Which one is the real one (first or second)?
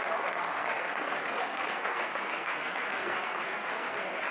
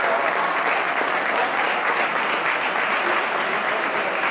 second